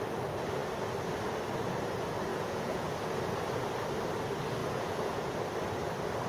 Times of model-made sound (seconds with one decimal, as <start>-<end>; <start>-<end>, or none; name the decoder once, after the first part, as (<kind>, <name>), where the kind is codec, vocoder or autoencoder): 2.3-3.1 (vocoder, Vocos); 4.6-5.4